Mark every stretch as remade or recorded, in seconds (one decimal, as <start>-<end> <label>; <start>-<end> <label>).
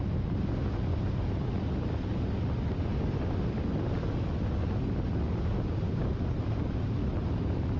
0.0-7.8 recorded